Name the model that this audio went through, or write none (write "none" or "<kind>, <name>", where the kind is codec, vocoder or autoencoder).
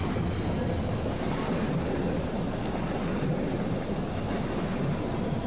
none